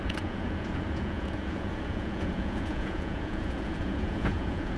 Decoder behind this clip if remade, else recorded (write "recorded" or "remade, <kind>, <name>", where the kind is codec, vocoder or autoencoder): remade, vocoder, Vocos